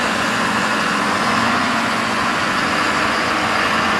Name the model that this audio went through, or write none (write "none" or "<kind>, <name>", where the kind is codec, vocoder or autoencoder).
vocoder, Vocos